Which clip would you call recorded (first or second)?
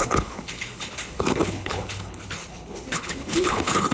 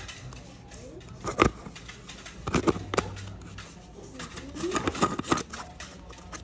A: second